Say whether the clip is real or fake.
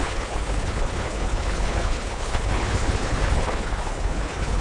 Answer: fake